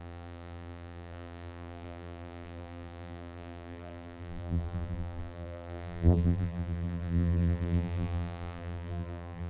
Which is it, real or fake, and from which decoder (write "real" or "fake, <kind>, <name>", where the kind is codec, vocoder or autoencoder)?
fake, vocoder, BigVGAN v2